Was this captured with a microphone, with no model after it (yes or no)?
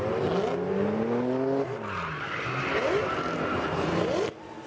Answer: yes